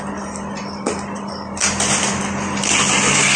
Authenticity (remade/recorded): recorded